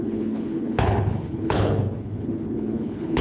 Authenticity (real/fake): fake